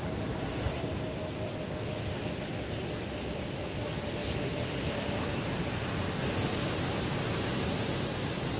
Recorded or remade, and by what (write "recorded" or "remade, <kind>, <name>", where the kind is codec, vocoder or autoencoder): recorded